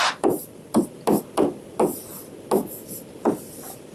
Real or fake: real